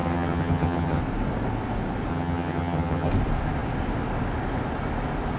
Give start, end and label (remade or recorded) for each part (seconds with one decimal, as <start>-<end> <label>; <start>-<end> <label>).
0.0-1.0 remade; 1.0-2.1 recorded; 2.1-3.1 remade; 3.1-5.4 recorded